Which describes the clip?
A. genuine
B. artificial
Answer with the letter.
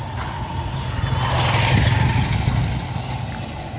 A